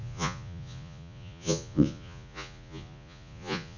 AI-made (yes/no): yes